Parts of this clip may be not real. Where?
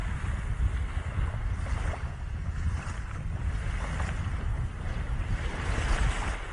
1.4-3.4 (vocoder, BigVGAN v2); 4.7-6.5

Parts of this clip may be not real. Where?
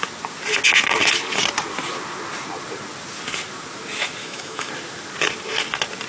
4.2-4.7 (autoencoder, DAC-VAE)